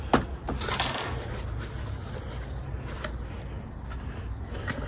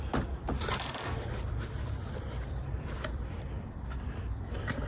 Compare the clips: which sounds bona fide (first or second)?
first